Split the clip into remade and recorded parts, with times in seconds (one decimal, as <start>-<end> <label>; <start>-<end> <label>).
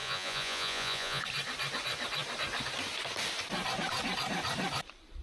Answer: 0.0-1.2 remade; 1.2-5.2 recorded